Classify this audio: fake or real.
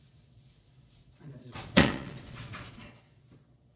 fake